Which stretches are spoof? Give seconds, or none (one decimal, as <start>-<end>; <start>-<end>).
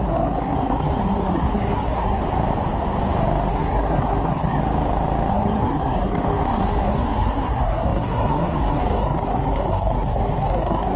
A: 0.0-2.2; 3.5-4.6; 5.3-11.0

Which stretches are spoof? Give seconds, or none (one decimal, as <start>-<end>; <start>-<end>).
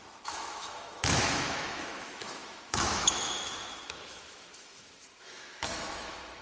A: 0.0-6.4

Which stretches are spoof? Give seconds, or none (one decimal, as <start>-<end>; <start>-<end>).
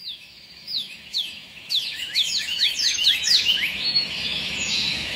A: 0.0-5.2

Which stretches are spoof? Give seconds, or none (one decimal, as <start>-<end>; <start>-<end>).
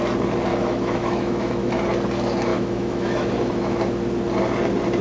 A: 0.5-1.7; 2.5-3.8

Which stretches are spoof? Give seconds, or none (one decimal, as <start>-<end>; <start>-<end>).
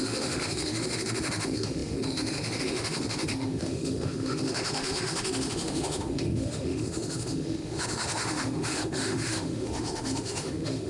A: 0.0-10.9